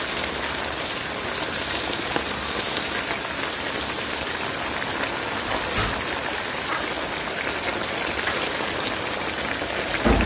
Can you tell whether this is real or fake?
real